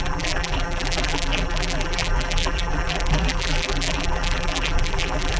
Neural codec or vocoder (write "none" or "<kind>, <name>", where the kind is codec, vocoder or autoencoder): vocoder, BigVGAN v2